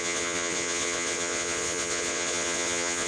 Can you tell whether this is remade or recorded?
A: remade